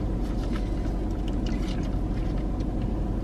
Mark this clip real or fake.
real